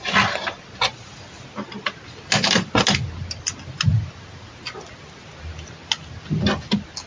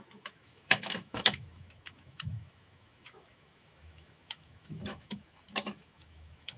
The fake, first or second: second